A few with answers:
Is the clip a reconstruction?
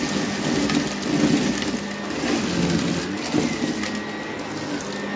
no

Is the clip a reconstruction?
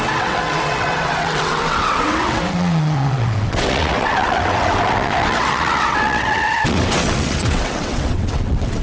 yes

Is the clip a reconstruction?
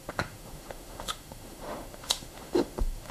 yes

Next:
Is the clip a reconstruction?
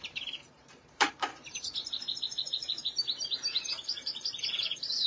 yes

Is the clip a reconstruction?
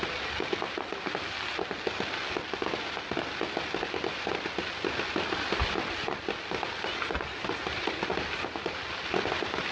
no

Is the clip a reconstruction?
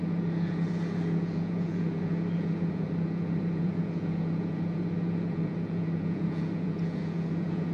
yes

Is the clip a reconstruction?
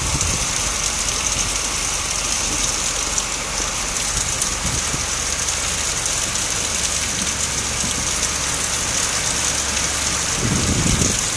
no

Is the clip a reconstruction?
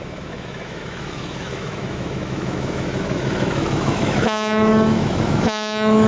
yes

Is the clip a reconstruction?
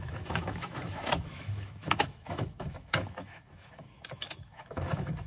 yes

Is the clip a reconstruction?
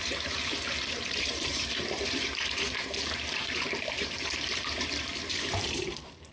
yes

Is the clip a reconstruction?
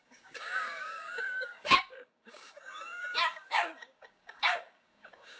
yes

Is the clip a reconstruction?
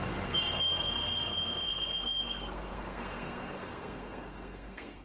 yes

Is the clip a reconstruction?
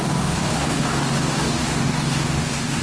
yes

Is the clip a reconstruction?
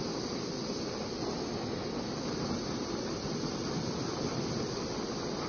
no